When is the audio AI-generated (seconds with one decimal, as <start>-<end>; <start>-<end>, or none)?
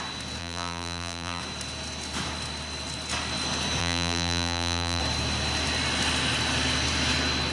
0.4-1.4; 3.8-5.0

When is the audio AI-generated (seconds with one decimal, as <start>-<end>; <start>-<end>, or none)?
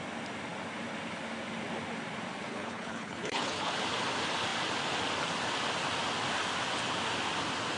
2.5-3.7